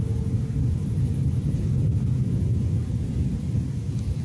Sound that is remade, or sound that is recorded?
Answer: recorded